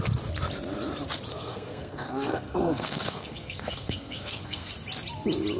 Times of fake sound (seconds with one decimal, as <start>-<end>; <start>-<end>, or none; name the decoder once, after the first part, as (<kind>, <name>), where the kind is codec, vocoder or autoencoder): 1.3-4.7 (codec, SNAC)